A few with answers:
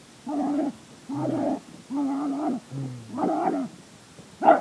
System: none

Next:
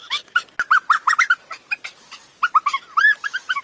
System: none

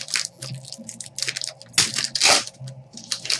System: none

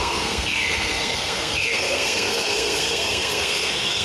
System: codec, SNAC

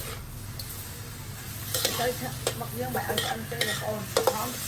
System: none